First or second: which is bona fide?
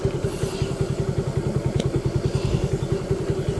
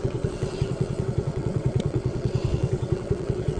first